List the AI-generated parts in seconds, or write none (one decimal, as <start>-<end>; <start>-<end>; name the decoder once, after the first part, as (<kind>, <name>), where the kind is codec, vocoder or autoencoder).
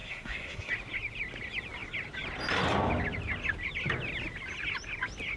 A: 0.0-0.7 (codec, SNAC)